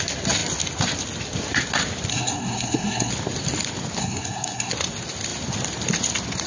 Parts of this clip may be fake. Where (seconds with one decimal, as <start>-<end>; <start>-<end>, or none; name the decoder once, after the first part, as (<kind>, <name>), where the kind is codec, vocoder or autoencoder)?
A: 2.1-3.1 (codec, SNAC); 4.0-4.7